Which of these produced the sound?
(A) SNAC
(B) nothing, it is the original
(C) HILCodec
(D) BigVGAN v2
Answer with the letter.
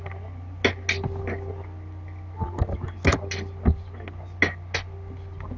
B